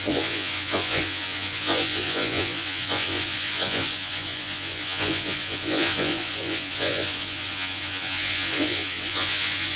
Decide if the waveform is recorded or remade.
remade